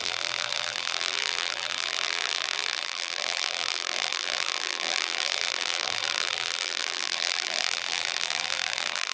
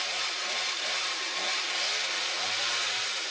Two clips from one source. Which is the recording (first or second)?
second